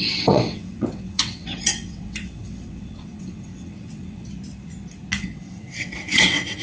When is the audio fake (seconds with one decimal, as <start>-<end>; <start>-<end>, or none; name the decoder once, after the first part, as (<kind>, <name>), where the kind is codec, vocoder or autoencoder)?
0.0-4.3 (vocoder, WaveNeXt); 5.2-6.6